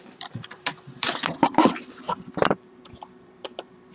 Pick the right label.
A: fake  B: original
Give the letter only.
A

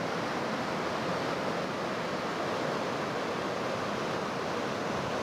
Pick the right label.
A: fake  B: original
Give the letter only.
B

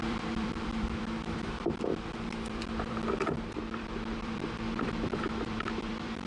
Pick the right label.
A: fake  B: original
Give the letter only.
A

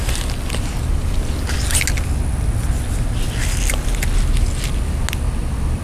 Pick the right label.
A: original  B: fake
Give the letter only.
A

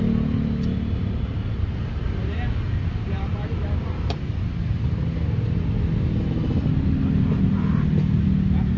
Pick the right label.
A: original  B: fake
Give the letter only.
A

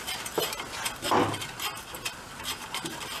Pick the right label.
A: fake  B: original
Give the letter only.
B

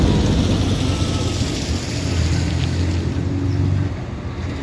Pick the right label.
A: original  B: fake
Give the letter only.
A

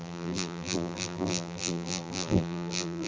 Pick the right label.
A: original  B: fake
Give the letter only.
B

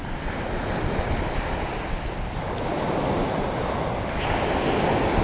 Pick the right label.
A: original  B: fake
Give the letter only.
A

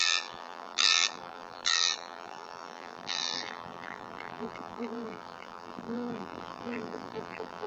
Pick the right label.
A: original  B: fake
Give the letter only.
B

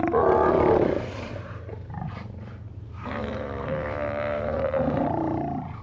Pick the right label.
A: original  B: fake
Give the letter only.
B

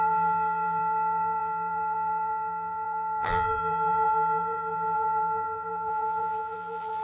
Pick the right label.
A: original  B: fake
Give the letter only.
B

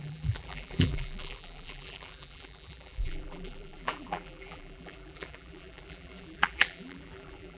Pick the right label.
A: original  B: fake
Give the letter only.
B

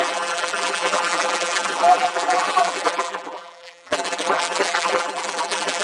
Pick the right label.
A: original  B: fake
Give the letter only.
B